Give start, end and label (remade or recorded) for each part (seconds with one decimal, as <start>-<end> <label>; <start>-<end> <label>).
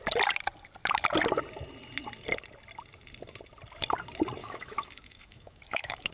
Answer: 0.0-4.4 recorded; 4.4-6.1 remade